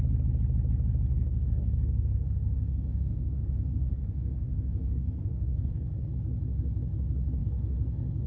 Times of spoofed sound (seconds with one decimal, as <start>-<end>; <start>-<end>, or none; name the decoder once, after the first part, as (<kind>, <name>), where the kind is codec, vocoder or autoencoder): 1.1-6.1 (codec, SNAC); 7.4-8.3